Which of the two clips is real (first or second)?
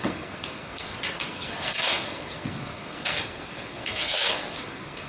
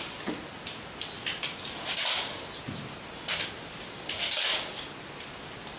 second